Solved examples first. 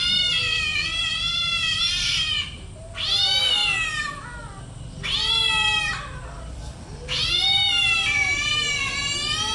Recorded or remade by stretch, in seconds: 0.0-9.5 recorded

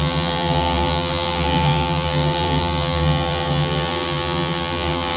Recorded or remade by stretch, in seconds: 0.0-5.2 remade

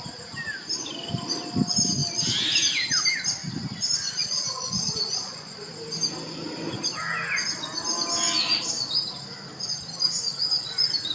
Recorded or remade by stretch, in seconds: 0.0-4.2 recorded; 4.2-5.7 remade; 5.7-11.1 recorded

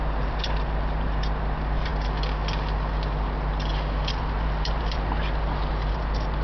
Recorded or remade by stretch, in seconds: 0.0-1.9 remade; 1.9-4.1 recorded; 4.1-6.4 remade

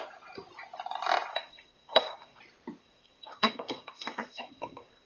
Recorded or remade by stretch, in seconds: 0.0-1.3 recorded; 1.3-2.4 remade; 2.4-2.8 recorded; 2.8-5.1 remade

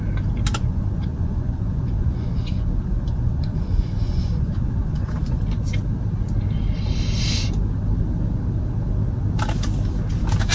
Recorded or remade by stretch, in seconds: 0.0-0.5 recorded; 0.5-5.4 remade; 5.4-10.5 recorded